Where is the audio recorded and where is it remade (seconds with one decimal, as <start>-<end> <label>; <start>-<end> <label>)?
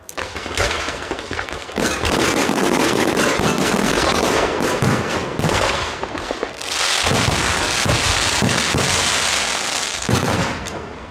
0.0-11.1 remade